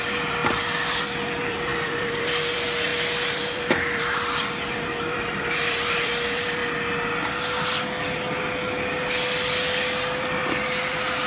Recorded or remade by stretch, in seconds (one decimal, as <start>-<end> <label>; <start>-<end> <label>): 0.0-6.6 remade; 6.6-10.2 recorded; 10.2-11.3 remade